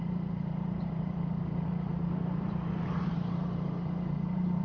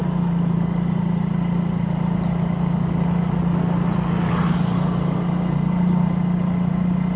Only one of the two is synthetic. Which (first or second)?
first